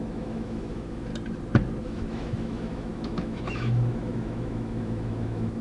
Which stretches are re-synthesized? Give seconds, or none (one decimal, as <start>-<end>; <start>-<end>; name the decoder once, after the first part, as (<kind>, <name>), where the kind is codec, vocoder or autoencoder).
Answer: 0.0-1.1 (autoencoder, DAC-VAE); 1.8-5.6